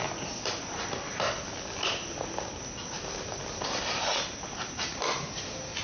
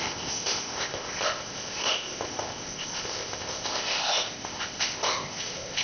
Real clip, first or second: first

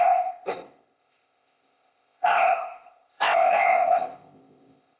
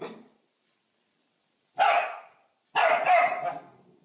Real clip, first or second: second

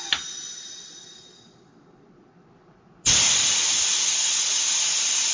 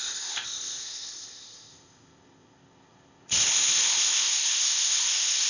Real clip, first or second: first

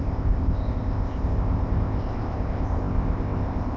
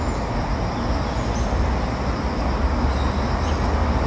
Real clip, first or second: second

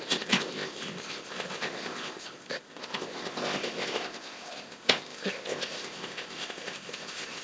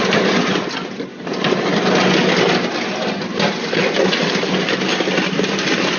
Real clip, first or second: second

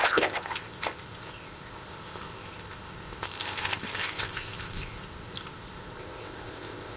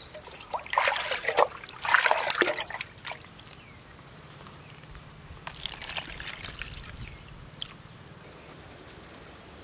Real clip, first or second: second